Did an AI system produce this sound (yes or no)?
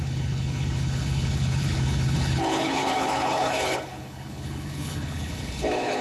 yes